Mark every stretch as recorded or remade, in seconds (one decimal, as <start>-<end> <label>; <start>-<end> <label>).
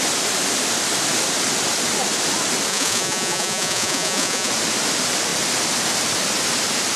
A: 0.0-2.7 recorded; 2.7-4.5 remade; 4.5-7.0 recorded